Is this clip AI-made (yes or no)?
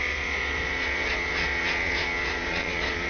yes